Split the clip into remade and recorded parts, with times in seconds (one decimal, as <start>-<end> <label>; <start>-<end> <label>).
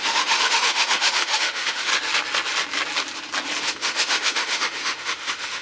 0.0-1.9 remade; 1.9-3.6 recorded; 3.6-5.6 remade